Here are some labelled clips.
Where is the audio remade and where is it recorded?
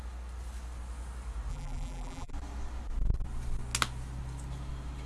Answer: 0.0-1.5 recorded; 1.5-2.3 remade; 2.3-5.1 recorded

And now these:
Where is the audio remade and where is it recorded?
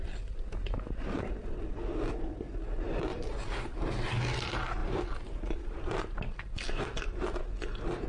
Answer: 0.0-4.8 recorded; 4.8-6.2 remade; 6.2-8.1 recorded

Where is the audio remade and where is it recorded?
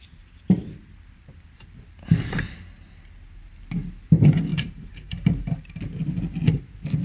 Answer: 0.0-4.5 recorded; 4.5-5.8 remade; 5.8-7.0 recorded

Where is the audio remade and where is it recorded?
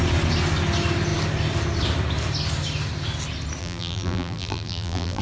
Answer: 0.0-3.6 recorded; 3.6-5.2 remade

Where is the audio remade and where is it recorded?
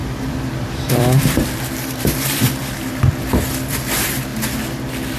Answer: 0.0-4.3 remade; 4.3-5.2 recorded